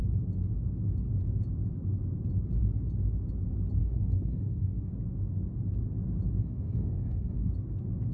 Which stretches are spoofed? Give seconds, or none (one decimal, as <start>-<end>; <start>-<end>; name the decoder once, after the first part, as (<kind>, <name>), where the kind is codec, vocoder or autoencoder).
3.8-4.9 (codec, DAC); 6.4-7.5